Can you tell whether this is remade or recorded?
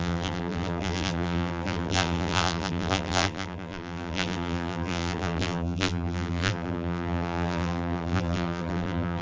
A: remade